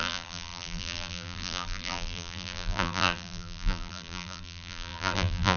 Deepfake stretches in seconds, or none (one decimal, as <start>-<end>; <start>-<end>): 0.0-5.6